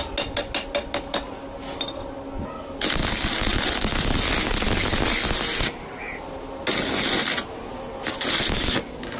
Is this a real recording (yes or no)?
yes